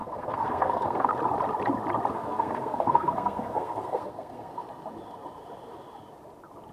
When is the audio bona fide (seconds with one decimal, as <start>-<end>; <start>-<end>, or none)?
1.1-2.1; 4.5-6.7